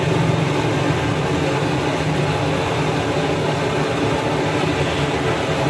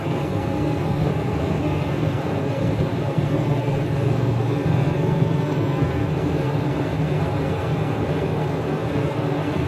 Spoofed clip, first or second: second